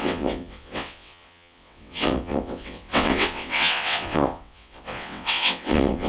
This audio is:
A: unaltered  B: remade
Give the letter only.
B